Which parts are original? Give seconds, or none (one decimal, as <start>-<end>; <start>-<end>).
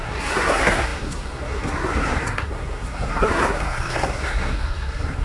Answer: none